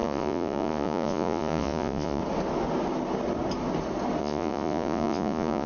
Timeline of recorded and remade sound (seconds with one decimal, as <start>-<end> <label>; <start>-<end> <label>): 0.0-2.2 remade; 2.2-4.2 recorded; 4.2-5.7 remade